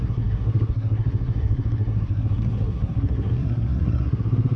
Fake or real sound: fake